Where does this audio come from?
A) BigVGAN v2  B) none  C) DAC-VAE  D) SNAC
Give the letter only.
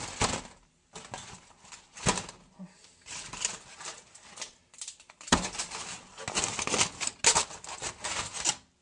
B